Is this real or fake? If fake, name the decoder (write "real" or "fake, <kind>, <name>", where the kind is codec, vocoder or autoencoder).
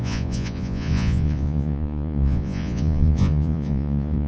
fake, vocoder, Vocos